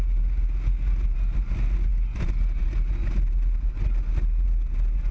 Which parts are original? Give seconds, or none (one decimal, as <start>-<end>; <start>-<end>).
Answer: 0.0-5.1